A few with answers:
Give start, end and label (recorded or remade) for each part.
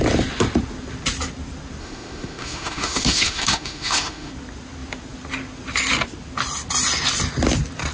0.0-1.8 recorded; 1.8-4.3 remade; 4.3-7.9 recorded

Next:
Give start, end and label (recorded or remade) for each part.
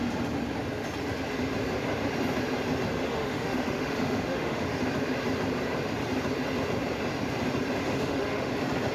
0.0-2.9 recorded; 2.9-4.8 remade; 4.8-7.8 recorded; 7.8-8.5 remade; 8.5-8.9 recorded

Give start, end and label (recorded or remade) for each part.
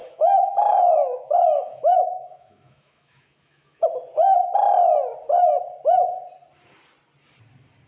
0.0-3.8 remade; 3.8-7.9 recorded